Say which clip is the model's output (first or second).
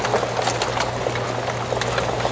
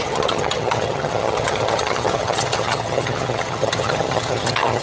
second